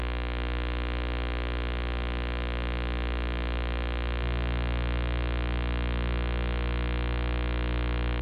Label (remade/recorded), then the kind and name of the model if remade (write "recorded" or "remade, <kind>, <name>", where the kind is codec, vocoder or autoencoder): recorded